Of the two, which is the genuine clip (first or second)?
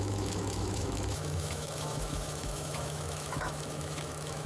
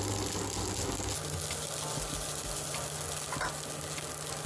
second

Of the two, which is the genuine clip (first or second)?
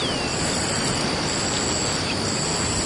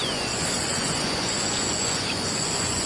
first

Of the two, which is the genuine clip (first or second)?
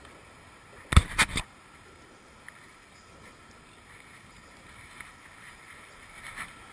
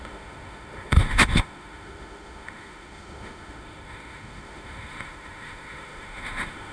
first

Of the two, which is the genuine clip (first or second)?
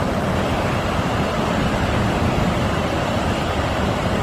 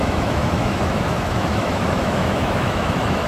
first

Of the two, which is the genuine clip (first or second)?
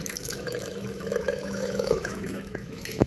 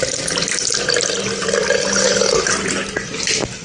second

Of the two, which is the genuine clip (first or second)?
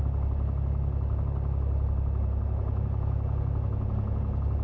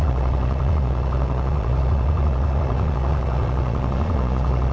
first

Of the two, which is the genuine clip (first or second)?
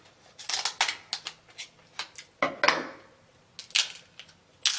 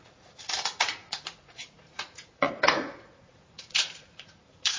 first